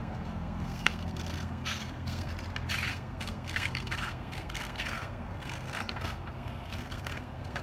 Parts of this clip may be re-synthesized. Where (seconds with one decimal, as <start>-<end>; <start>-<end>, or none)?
0.0-2.3; 2.9-7.6